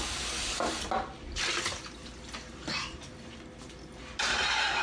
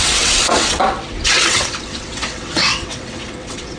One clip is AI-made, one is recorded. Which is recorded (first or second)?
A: first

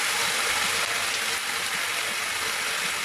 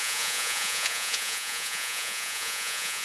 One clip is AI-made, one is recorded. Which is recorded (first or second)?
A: first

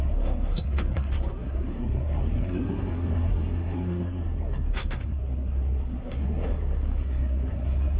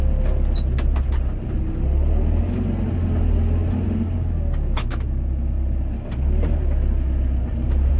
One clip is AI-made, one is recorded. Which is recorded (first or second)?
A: second